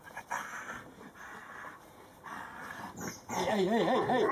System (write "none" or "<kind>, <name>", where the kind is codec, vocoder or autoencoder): none